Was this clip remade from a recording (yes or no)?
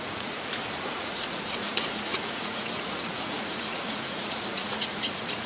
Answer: yes